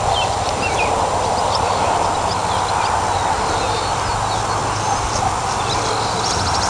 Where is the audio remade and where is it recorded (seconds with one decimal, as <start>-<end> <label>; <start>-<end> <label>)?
0.0-6.7 recorded